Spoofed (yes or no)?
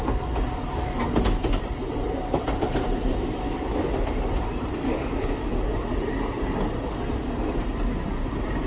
no